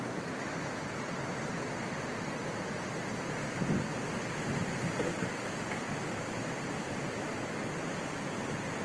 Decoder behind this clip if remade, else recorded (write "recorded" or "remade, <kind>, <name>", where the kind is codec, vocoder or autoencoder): recorded